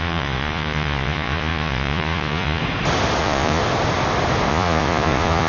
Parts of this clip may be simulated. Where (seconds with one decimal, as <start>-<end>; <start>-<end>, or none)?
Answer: 0.0-2.6; 3.2-3.6; 4.5-5.5

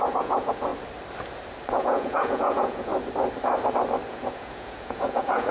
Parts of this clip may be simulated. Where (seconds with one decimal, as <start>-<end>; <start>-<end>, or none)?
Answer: 0.0-0.7; 1.7-2.9; 4.1-5.5

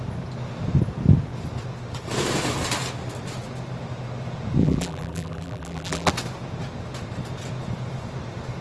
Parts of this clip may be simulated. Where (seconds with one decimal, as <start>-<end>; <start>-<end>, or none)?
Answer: 4.6-6.1

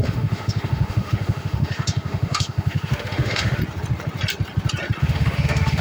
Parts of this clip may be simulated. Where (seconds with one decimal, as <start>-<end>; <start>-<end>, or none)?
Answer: 0.0-3.6; 5.0-5.8

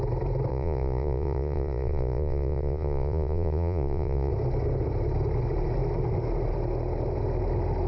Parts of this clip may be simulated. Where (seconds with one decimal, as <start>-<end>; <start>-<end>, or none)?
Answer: 0.5-4.3

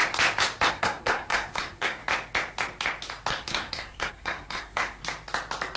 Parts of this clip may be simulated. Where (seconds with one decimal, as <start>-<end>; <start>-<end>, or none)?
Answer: 0.7-2.0; 3.3-5.0

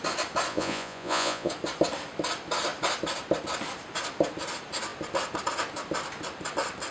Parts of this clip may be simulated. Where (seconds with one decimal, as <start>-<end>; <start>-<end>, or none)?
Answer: 0.5-1.5